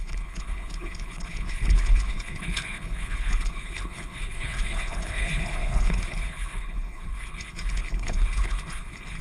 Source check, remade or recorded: remade